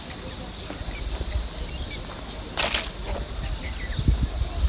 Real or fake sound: real